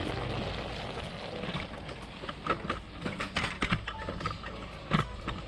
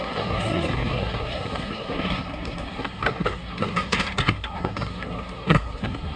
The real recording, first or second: first